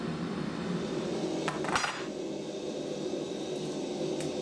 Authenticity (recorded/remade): recorded